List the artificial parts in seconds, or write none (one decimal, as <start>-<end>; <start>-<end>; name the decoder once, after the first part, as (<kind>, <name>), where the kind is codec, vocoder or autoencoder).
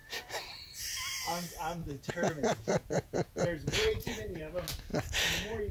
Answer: 1.8-4.4 (vocoder, Vocos)